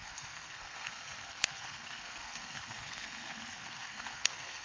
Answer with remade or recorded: remade